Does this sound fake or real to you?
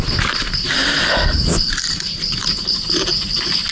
real